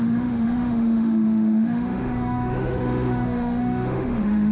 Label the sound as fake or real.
fake